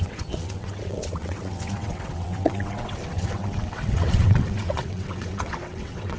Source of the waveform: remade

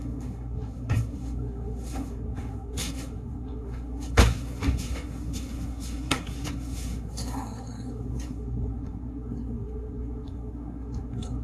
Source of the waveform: remade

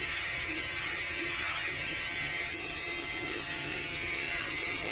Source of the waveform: remade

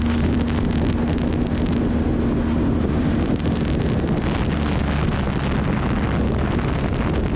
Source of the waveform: recorded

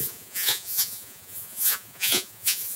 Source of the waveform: remade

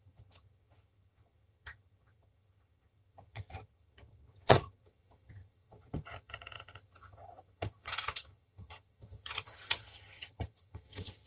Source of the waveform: remade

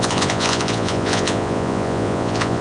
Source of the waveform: remade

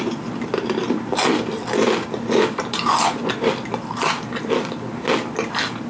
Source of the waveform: recorded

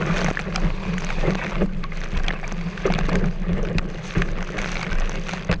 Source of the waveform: recorded